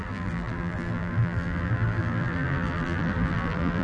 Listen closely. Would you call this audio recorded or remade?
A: remade